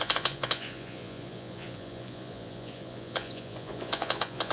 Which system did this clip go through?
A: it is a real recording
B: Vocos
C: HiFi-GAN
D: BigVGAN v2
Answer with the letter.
B